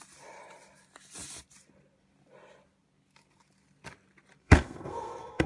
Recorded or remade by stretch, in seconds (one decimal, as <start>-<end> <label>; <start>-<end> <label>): 0.0-4.4 recorded; 4.4-5.5 remade